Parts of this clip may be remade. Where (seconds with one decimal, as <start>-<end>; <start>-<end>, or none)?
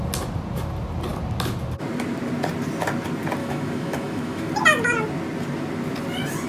3.4-4.5